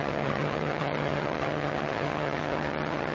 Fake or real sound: fake